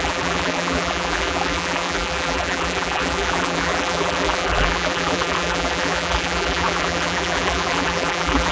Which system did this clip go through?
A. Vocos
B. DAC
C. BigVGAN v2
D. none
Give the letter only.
C